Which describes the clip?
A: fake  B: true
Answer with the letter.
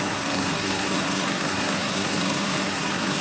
A